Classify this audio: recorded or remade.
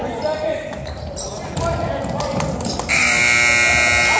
recorded